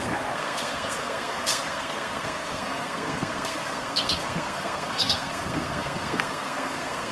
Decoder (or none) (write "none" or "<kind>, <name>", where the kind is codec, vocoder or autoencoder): codec, SNAC